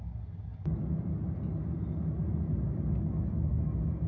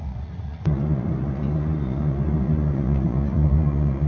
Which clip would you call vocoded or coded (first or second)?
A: second